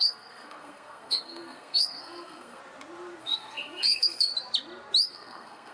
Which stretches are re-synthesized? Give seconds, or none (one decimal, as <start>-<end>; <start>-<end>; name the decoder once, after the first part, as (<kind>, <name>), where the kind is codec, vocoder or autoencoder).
0.0-2.6 (codec, SNAC); 3.2-4.3; 5.1-5.7